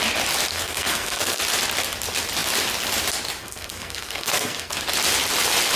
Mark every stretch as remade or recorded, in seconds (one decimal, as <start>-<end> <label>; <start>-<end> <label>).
0.0-0.5 recorded; 0.5-1.4 remade; 1.4-3.4 recorded; 3.4-4.7 remade; 4.7-5.8 recorded